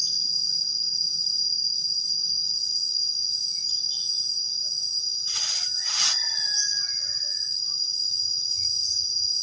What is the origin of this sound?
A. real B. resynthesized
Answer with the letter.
A